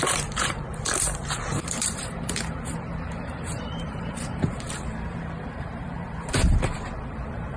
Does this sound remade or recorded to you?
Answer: remade